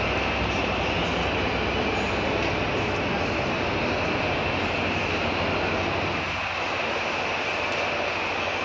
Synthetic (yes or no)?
no